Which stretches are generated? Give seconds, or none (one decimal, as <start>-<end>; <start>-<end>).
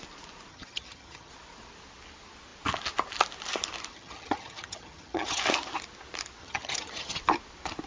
0.5-1.3; 3.9-5.4; 6.4-7.2